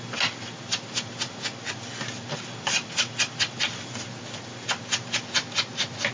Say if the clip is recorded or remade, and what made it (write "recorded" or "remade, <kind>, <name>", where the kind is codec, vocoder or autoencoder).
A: recorded